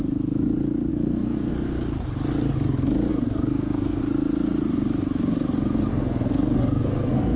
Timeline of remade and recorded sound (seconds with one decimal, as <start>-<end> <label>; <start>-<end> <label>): 0.0-0.9 recorded; 0.9-1.5 remade; 1.5-3.1 recorded; 3.1-4.0 remade; 4.0-5.9 recorded; 5.9-7.4 remade

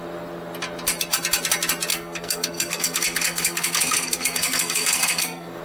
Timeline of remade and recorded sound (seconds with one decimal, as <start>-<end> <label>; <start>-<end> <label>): 0.0-1.9 recorded; 1.9-5.6 remade

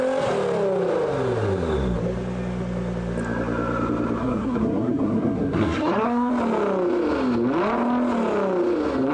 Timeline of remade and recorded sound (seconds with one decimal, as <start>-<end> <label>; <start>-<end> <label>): 0.0-4.2 recorded; 4.2-6.3 remade; 6.3-9.1 recorded

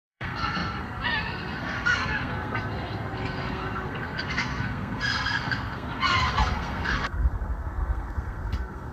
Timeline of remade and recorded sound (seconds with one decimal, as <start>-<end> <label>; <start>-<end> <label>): 0.0-8.9 remade

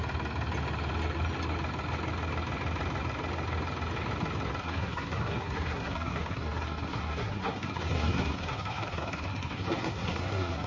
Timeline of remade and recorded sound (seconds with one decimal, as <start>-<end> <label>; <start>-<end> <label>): 0.0-4.6 recorded; 4.6-10.7 remade

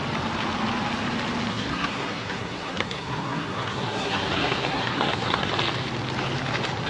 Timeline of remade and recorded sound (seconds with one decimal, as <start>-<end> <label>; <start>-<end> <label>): 0.0-1.5 recorded; 1.5-5.5 remade; 5.5-6.9 recorded

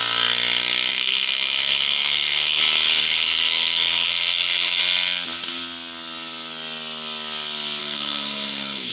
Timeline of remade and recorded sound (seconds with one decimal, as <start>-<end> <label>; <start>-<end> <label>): 0.0-0.9 recorded; 0.9-2.6 remade; 2.6-3.0 recorded; 3.0-4.8 remade; 4.8-7.8 recorded; 7.8-8.9 remade